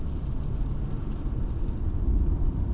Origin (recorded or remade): recorded